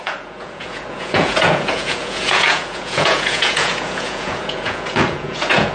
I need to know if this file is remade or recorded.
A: remade